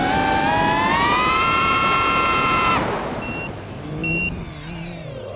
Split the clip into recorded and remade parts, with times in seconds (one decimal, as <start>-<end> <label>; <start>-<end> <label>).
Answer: 0.0-0.9 recorded; 0.9-2.7 remade; 2.7-5.4 recorded